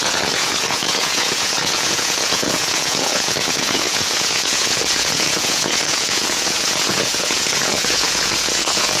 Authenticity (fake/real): fake